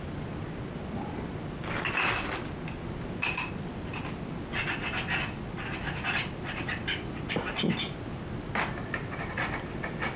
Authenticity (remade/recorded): recorded